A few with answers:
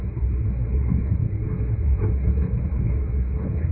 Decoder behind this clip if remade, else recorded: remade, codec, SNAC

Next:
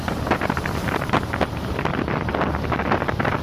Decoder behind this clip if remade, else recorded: recorded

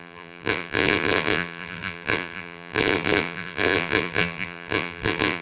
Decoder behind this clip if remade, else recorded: remade, vocoder, BigVGAN v2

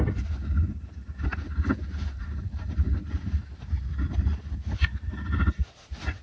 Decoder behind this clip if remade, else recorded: recorded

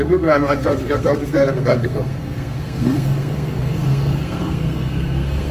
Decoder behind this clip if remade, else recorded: remade, codec, SNAC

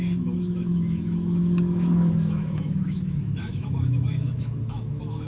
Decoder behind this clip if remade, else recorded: remade, autoencoder, DAC-VAE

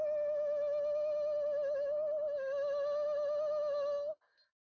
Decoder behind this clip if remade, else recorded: recorded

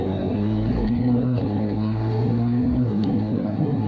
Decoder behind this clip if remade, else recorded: remade, codec, SNAC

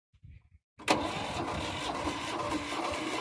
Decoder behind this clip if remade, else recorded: recorded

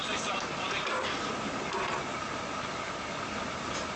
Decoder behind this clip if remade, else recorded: remade, vocoder, BigVGAN v2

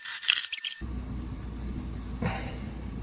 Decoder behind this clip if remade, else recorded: remade, vocoder, BigVGAN v2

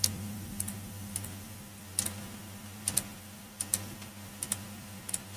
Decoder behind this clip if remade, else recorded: recorded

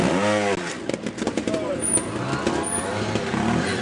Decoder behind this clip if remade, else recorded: recorded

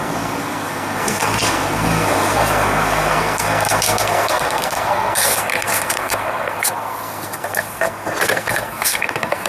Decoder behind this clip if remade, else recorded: remade, codec, SNAC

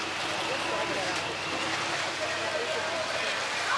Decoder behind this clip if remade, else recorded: recorded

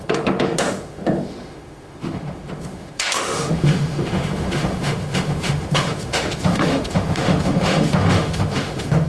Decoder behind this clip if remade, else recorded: remade, autoencoder, DAC-VAE